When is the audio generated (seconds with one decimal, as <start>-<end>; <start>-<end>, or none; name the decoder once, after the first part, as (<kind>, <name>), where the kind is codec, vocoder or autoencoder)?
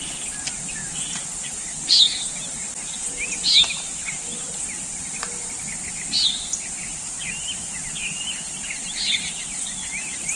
none